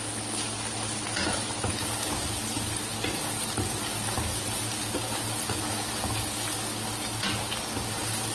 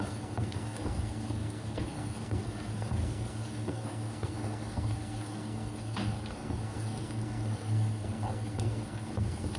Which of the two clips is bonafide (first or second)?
first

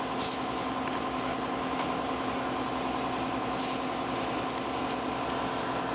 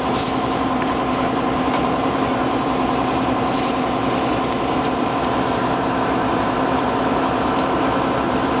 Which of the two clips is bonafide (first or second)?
first